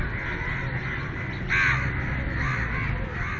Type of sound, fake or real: real